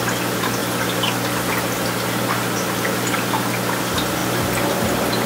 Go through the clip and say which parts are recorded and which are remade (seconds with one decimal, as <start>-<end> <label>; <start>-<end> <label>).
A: 0.0-5.3 recorded

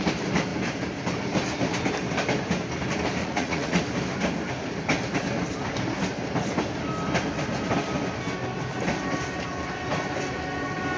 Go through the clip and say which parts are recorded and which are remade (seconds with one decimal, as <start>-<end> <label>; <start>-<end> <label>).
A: 0.0-3.2 recorded; 3.2-3.8 remade; 3.8-11.0 recorded

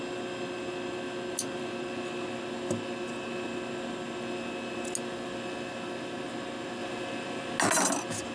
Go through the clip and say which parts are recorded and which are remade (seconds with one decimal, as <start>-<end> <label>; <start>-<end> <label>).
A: 0.0-8.3 recorded

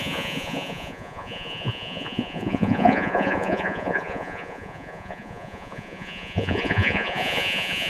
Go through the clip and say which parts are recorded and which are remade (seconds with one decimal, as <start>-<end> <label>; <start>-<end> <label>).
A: 0.0-7.9 remade